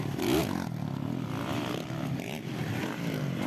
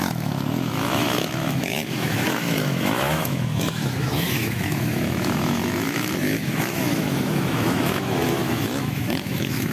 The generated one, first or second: second